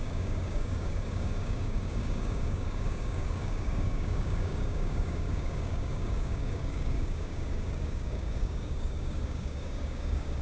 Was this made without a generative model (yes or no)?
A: no